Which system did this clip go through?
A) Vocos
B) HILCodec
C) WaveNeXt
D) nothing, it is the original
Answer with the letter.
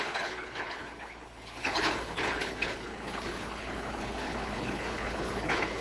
B